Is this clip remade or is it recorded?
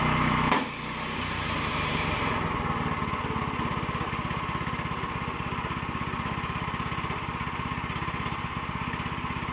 recorded